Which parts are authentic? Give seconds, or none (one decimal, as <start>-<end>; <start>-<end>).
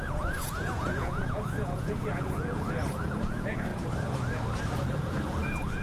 3.7-4.9